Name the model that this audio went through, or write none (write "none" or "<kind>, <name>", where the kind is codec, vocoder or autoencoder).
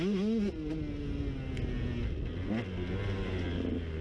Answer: none